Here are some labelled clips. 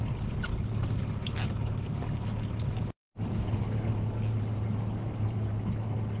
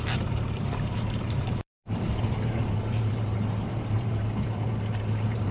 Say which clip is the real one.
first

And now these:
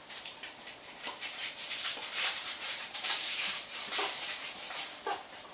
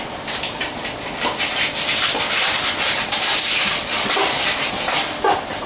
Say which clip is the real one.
second